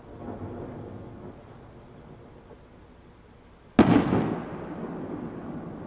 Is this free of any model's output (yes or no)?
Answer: yes